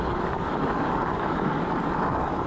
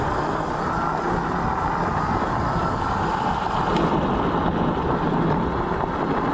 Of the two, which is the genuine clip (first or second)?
second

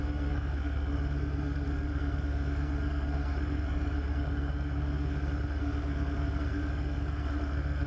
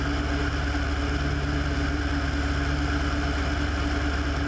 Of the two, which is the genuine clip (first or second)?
second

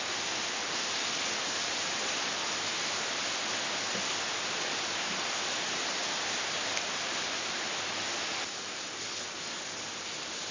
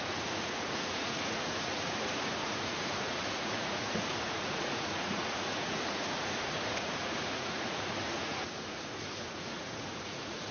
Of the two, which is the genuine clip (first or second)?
first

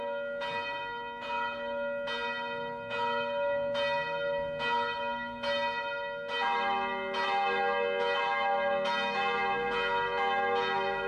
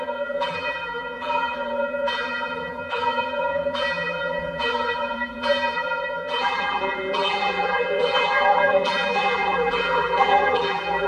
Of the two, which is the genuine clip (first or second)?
first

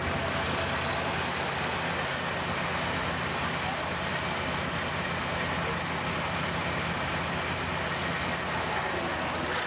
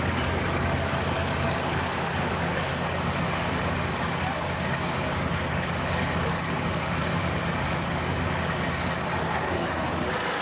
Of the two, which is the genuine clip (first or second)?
first